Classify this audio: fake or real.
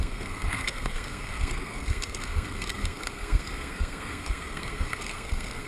fake